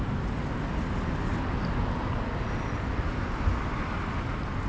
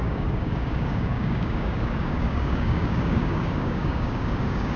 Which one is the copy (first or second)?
second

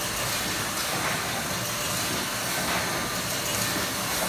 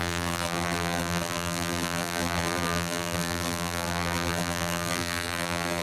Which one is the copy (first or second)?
second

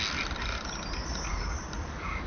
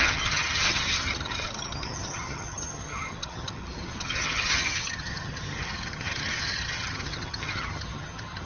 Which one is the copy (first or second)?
second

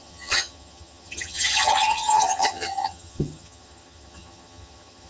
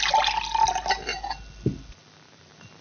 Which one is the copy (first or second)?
first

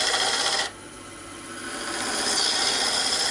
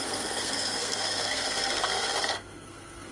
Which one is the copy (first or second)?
second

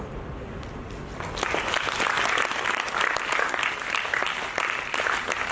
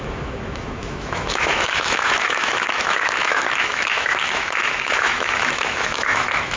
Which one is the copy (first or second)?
second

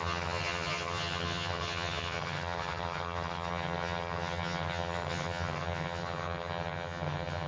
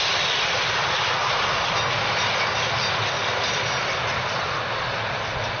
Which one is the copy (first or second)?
first